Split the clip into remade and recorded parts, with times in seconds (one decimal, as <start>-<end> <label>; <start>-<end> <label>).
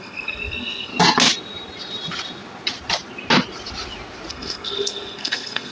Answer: 0.0-0.9 remade; 0.9-4.3 recorded; 4.3-5.7 remade